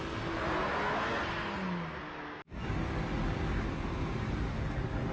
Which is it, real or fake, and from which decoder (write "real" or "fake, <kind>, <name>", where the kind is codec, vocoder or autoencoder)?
real